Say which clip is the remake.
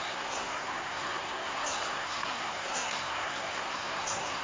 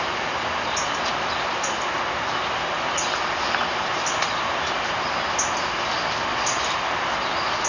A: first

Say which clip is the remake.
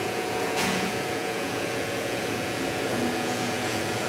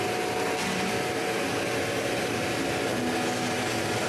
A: first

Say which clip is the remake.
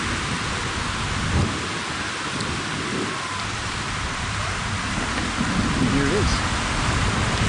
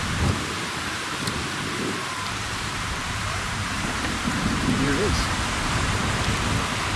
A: second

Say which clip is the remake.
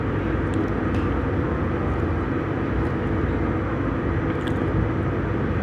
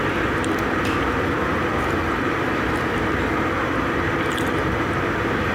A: second